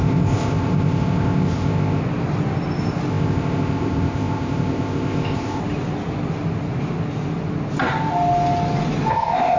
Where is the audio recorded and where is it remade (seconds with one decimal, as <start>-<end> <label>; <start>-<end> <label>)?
0.0-2.0 remade; 2.0-3.1 recorded; 3.1-5.6 remade; 5.6-9.1 recorded; 9.1-9.6 remade